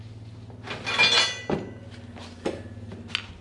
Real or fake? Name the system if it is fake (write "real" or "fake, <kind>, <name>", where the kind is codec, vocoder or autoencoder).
real